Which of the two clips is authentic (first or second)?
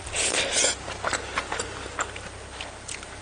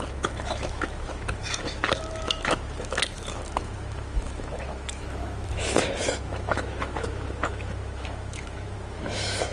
first